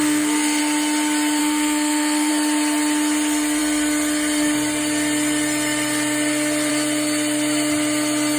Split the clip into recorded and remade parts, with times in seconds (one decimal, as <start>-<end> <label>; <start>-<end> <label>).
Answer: 0.0-0.6 remade; 0.6-1.4 recorded; 1.4-2.3 remade; 2.3-8.4 recorded